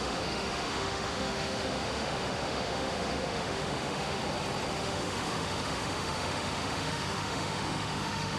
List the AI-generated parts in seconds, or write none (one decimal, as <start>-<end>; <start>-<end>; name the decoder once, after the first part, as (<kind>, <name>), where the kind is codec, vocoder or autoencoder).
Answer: 0.0-4.2 (autoencoder, DAC-VAE); 4.7-8.4